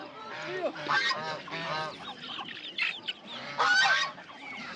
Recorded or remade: remade